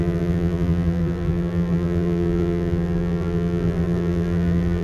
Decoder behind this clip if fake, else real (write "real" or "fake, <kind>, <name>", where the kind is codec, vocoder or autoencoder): fake, vocoder, BigVGAN v2